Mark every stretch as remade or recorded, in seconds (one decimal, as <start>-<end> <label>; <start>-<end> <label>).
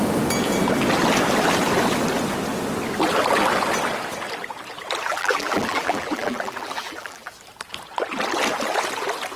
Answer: 0.0-5.1 recorded; 5.1-7.3 remade; 7.3-9.4 recorded